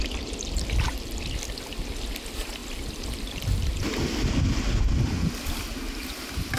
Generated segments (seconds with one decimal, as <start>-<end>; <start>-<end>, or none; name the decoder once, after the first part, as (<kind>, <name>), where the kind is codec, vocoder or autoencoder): none